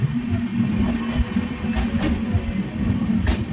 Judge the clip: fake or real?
real